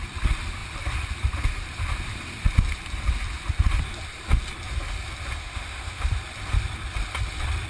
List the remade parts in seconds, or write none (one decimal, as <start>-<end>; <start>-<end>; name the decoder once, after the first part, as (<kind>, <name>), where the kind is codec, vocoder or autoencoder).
5.4-6.0 (autoencoder, DAC-VAE)